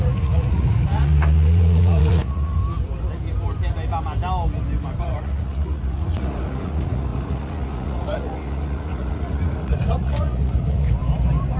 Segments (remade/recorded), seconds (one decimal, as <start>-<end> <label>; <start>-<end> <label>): 0.0-2.6 remade; 2.6-5.0 recorded; 5.0-11.0 remade; 11.0-11.6 recorded